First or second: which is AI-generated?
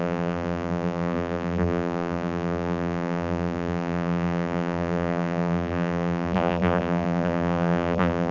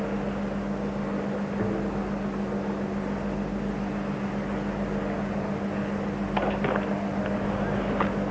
first